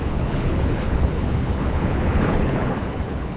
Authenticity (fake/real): fake